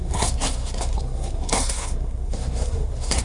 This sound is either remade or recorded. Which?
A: remade